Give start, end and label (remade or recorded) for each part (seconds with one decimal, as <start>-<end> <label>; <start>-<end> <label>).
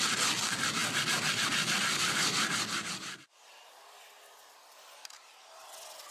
0.0-6.1 recorded